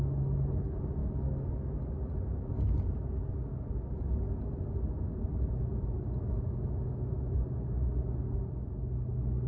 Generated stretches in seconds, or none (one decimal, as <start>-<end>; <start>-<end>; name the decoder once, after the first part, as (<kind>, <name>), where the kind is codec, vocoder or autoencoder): 1.0-1.5 (autoencoder, DAC-VAE)

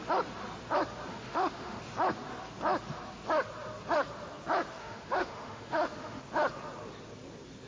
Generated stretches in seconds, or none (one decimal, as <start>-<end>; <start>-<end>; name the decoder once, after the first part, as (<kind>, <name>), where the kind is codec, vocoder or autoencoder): 1.1-1.8 (autoencoder, DAC-VAE); 4.8-6.2

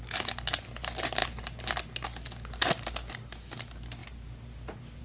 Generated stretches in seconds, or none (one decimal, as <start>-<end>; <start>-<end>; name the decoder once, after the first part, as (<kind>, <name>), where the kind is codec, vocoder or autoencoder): none

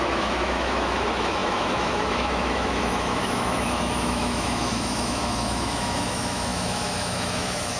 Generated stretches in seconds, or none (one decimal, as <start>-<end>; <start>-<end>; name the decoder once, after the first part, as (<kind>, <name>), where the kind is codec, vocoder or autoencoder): 0.0-7.8 (autoencoder, DAC-VAE)